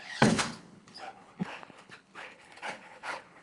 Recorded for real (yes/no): no